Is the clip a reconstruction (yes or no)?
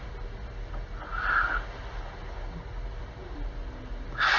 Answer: no